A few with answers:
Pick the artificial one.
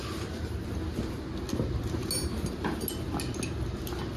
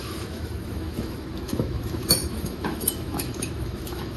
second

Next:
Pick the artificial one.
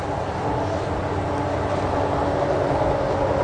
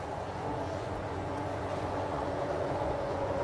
second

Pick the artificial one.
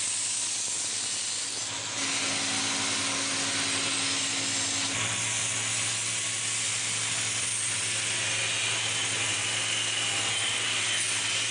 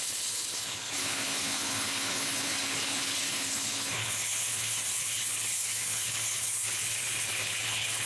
second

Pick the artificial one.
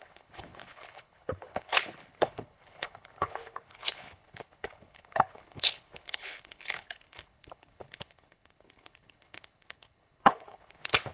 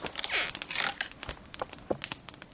first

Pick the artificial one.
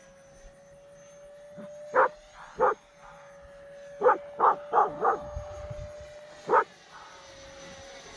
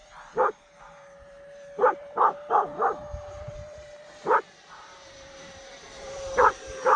second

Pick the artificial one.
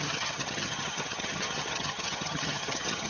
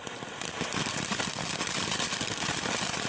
first